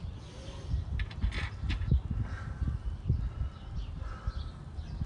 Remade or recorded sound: remade